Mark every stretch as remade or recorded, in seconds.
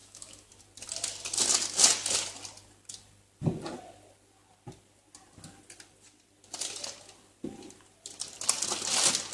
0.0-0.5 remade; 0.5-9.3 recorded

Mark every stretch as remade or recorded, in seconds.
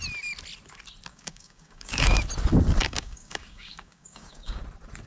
0.0-1.1 recorded; 1.1-2.2 remade; 2.2-2.8 recorded; 2.8-4.6 remade; 4.6-5.1 recorded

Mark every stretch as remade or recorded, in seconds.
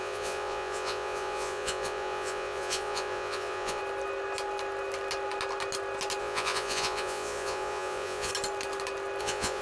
0.0-3.8 remade; 3.8-6.2 recorded; 6.2-8.3 remade; 8.3-9.2 recorded; 9.2-9.6 remade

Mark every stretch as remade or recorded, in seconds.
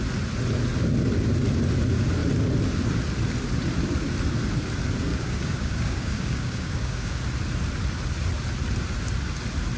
0.0-5.1 recorded; 5.1-7.2 remade; 7.2-9.8 recorded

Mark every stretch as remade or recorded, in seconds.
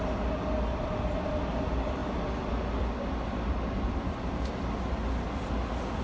0.0-6.0 recorded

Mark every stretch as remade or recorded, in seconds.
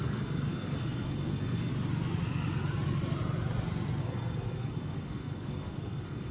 0.0-1.7 remade; 1.7-4.0 recorded; 4.0-6.3 remade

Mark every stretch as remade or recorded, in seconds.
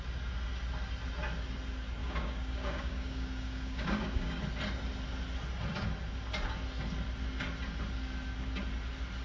0.0-2.0 recorded; 2.0-4.4 remade; 4.4-9.2 recorded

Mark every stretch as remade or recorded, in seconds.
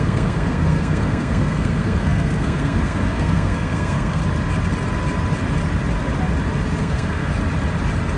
0.0-4.2 remade; 4.2-6.8 recorded; 6.8-7.3 remade; 7.3-8.2 recorded